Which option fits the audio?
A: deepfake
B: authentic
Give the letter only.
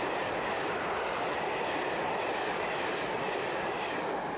B